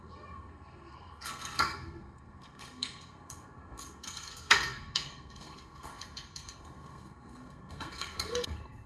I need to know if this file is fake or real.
fake